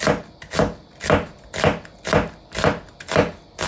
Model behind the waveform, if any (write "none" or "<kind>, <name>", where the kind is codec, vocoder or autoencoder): none